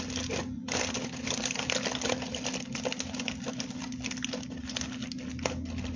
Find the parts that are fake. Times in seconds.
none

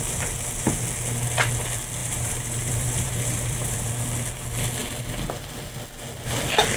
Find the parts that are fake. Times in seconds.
2.0-3.9 (vocoder, BigVGAN v2)

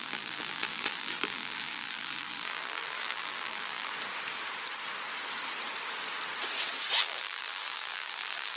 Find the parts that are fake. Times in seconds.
0.0-3.9 (vocoder, BigVGAN v2); 7.0-8.6

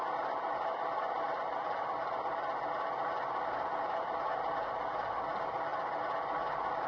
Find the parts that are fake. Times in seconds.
none

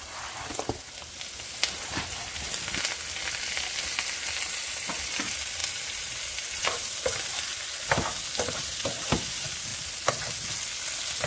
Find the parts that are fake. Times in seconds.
none

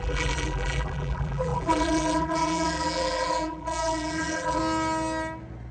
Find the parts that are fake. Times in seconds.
0.0-4.6 (vocoder, BigVGAN v2)

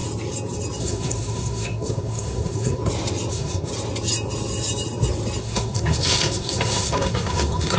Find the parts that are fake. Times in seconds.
0.8-2.8 (codec, SNAC); 3.3-3.7; 5.4-7.8

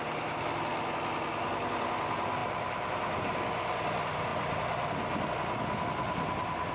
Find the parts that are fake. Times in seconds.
none